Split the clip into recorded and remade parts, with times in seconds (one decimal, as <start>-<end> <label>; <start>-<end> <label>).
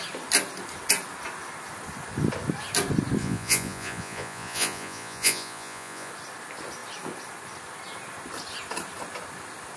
0.0-3.2 recorded; 3.2-6.1 remade; 6.1-9.8 recorded